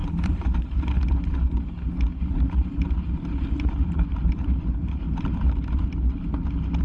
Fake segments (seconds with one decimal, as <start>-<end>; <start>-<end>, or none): 0.0-0.8; 2.1-5.8